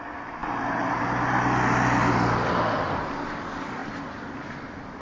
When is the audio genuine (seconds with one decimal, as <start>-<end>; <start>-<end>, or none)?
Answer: 0.0-5.0

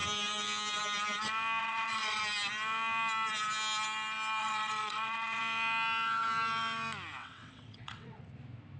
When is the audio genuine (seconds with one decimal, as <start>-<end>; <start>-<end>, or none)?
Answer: 0.0-1.6; 2.2-4.4; 5.4-7.2; 8.2-8.8

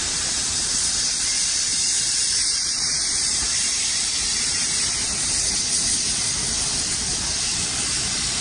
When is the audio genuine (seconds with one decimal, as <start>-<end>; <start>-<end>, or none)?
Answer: 0.7-1.7; 4.9-8.4